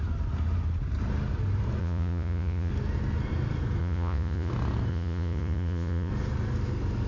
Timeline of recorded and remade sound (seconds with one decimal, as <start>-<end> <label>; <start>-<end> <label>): 0.0-1.8 recorded; 1.8-2.7 remade; 2.7-3.8 recorded; 3.8-4.5 remade; 4.5-4.9 recorded; 4.9-6.1 remade; 6.1-7.1 recorded